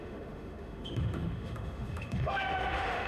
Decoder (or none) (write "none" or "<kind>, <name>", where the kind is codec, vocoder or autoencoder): autoencoder, DAC-VAE